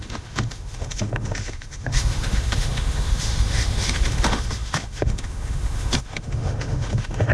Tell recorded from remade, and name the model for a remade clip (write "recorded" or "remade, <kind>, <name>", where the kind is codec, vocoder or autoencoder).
remade, autoencoder, DAC-VAE